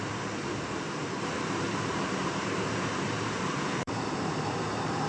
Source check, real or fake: fake